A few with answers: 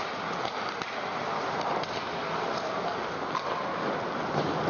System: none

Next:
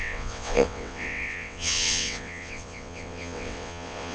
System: vocoder, WaveNeXt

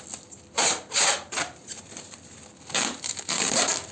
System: none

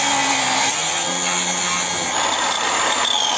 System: none